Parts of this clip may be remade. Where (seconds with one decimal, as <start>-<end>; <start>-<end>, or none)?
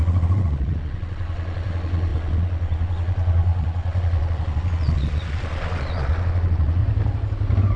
0.0-6.8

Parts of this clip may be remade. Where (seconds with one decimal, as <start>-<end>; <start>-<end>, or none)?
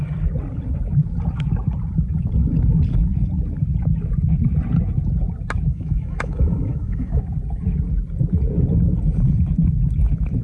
5.7-7.2